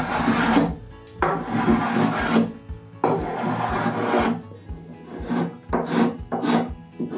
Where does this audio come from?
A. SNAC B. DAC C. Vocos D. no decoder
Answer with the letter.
D